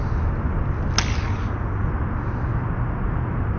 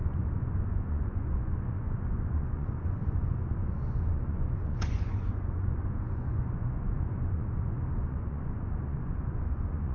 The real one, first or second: first